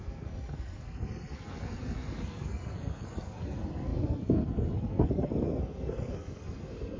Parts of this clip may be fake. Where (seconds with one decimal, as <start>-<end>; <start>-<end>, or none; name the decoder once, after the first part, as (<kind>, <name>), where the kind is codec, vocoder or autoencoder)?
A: 0.0-7.0 (codec, SNAC)